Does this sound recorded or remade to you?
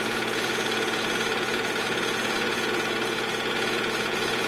remade